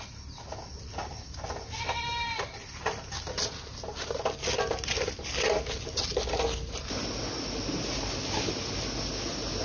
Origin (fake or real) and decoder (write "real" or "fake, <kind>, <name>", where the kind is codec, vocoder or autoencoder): real